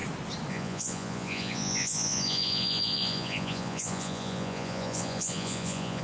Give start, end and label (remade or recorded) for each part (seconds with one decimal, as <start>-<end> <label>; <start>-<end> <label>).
0.0-0.5 recorded; 0.5-6.0 remade